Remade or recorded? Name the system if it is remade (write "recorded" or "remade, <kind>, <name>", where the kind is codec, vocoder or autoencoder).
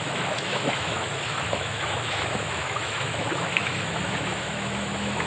remade, autoencoder, DAC-VAE